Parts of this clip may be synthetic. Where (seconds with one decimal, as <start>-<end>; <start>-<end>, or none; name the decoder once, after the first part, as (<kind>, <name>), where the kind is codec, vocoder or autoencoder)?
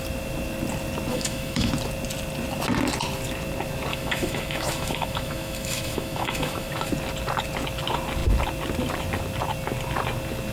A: 1.1-1.7 (autoencoder, DAC-VAE); 3.9-6.9